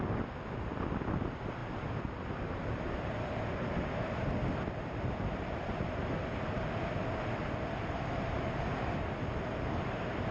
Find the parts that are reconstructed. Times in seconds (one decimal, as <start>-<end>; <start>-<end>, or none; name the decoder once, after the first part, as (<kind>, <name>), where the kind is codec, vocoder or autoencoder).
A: none